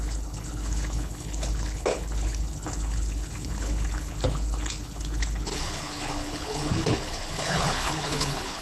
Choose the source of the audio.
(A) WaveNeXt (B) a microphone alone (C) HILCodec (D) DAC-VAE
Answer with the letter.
C